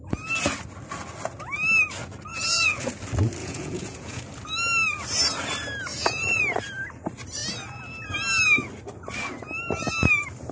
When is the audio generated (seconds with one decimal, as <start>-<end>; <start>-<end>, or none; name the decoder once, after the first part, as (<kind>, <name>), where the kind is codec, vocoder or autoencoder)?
2.3-2.9 (vocoder, Vocos); 3.4-4.2; 5.9-6.4